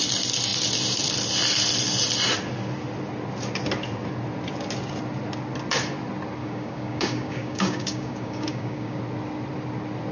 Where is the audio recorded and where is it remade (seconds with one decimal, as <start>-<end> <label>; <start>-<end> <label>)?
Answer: 0.0-6.4 recorded; 6.4-9.0 remade; 9.0-10.1 recorded